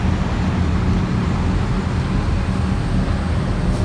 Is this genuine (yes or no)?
yes